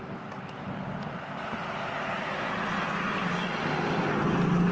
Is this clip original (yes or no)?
yes